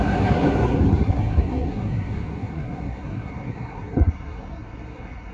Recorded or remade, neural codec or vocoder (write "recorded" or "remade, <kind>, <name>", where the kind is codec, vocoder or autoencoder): remade, codec, SNAC